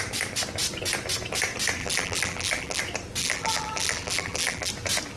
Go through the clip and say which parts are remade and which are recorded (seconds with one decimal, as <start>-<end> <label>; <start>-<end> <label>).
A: 0.0-1.8 recorded; 1.8-2.8 remade; 2.8-3.2 recorded; 3.2-4.7 remade; 4.7-5.2 recorded